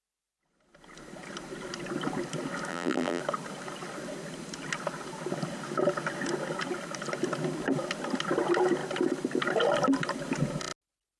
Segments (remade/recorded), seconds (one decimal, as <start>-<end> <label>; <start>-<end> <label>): 0.0-2.7 recorded; 2.7-3.2 remade; 3.2-11.2 recorded